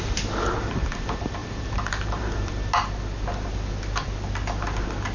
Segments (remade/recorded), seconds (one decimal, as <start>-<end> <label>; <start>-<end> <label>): 0.0-1.4 recorded; 1.4-2.5 remade; 2.5-5.1 recorded